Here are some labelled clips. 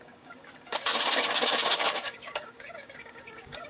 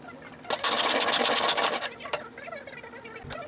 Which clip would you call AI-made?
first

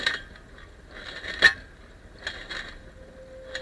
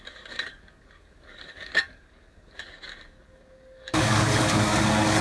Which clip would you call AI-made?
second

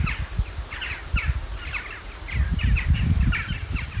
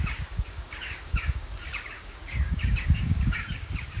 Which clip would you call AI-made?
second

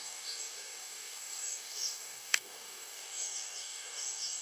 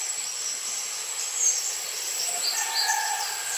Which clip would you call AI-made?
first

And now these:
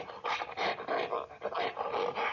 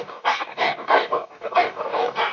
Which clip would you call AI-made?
second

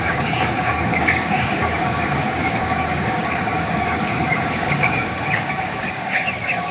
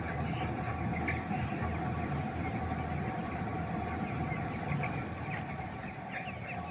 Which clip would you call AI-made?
first